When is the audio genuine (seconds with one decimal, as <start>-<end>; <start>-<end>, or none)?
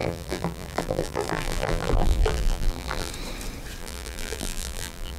3.1-3.8